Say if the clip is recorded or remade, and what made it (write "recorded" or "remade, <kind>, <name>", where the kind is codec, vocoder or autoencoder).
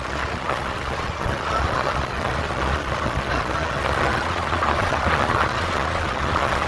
remade, vocoder, Vocos